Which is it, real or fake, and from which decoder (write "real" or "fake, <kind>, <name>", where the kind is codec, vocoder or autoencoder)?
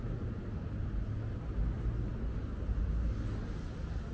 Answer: real